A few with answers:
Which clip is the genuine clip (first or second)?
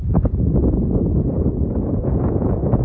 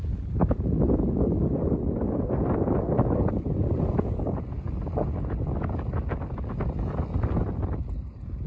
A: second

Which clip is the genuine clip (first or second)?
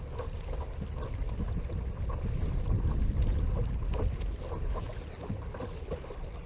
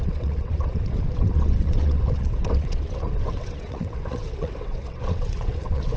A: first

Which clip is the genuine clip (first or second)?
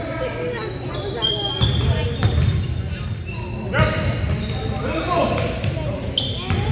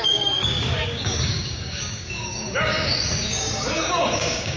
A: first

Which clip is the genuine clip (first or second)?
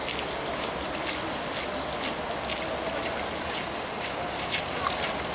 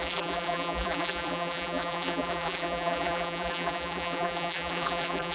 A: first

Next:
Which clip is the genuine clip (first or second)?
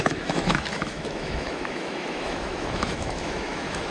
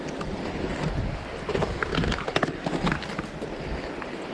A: second